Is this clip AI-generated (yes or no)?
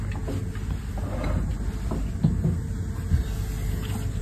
no